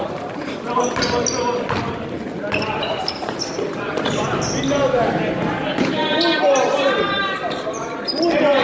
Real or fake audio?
real